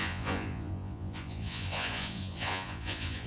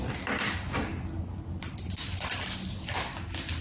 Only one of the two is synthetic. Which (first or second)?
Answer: first